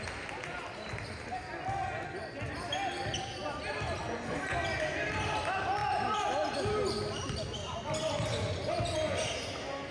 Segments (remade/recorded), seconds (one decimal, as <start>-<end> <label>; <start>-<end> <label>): 0.0-9.9 recorded